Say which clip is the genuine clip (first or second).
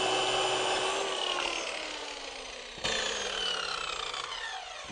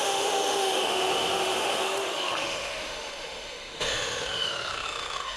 first